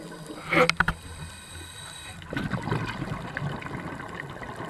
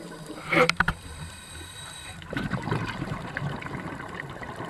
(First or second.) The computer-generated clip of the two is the second